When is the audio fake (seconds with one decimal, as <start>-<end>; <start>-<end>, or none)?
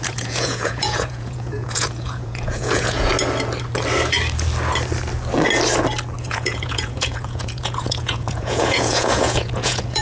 0.0-3.1; 6.2-10.0